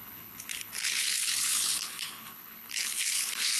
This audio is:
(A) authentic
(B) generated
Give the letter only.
B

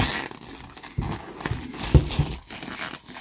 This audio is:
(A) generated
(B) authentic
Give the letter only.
B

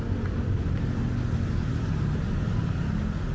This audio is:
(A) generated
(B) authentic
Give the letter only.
B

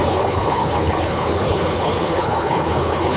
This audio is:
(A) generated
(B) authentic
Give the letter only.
A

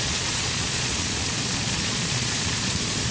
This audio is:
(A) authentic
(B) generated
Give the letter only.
B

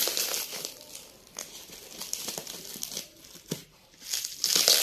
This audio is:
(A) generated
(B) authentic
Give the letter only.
B